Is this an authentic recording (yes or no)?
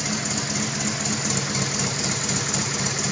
yes